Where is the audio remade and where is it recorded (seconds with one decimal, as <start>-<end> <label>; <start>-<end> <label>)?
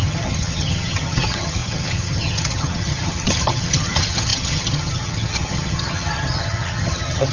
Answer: 0.0-7.3 remade